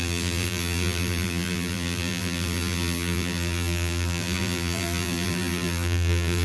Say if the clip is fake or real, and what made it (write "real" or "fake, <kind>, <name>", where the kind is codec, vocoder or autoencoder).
fake, vocoder, BigVGAN v2